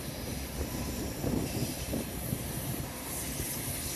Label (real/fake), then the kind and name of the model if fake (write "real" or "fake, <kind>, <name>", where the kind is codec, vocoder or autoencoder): fake, vocoder, BigVGAN v2